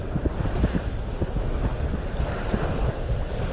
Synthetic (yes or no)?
no